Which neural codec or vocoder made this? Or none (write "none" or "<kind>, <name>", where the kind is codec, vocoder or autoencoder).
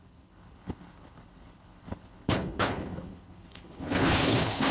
codec, HILCodec